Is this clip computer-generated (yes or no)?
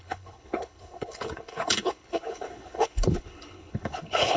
yes